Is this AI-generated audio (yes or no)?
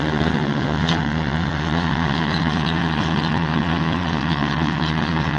yes